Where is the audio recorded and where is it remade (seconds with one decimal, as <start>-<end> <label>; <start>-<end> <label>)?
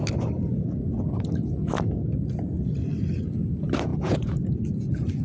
0.0-3.9 recorded; 3.9-4.6 remade; 4.6-5.2 recorded